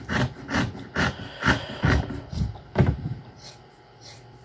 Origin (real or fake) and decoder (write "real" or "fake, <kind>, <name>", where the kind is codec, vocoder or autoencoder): fake, vocoder, BigVGAN v2